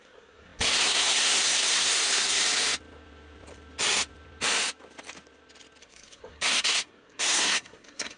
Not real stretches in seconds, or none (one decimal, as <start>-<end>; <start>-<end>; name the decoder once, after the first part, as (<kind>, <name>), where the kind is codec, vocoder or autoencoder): 0.0-2.4 (codec, SNAC); 5.8-8.2